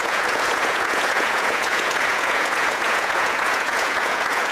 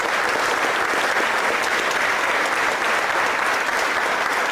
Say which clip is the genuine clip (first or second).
second